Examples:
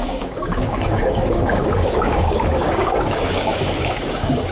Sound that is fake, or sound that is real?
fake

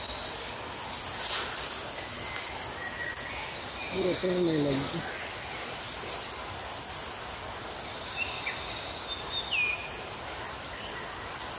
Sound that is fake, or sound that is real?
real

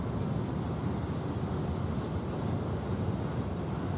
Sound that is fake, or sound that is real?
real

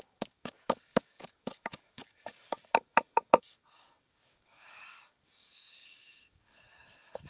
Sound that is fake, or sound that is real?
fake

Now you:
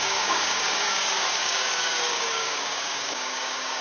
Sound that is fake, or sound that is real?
fake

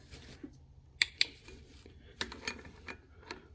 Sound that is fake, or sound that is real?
real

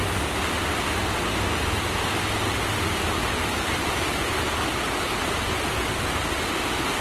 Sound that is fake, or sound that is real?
real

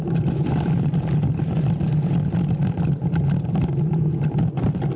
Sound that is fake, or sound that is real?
real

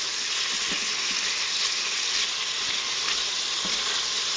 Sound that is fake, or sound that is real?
real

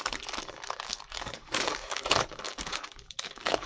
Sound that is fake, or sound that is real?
fake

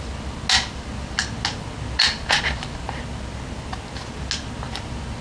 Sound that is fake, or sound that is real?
real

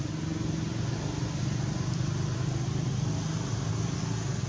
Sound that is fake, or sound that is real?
real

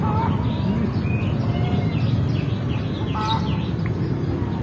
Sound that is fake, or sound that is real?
real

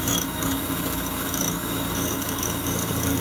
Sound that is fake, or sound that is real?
fake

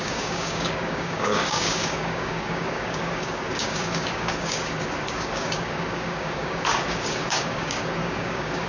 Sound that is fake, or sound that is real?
fake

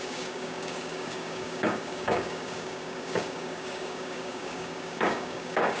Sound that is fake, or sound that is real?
fake